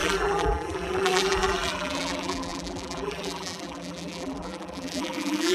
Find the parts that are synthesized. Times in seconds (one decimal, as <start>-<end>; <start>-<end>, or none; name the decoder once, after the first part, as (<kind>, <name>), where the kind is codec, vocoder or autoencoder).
0.0-5.5 (vocoder, BigVGAN v2)